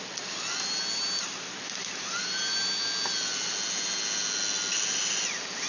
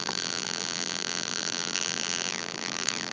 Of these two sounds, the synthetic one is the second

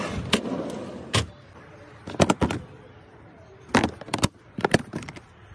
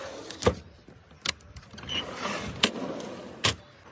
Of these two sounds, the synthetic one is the first